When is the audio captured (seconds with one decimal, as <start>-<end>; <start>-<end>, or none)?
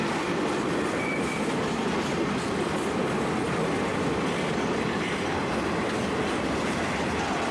0.0-7.5